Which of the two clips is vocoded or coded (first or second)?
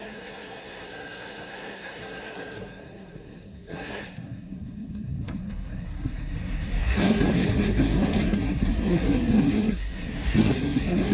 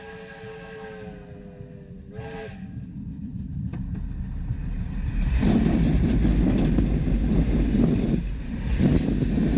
first